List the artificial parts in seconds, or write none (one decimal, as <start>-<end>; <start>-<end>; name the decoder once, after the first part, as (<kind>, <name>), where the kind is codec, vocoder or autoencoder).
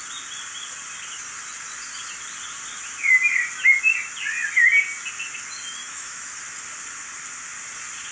5.8-6.4 (autoencoder, DAC-VAE)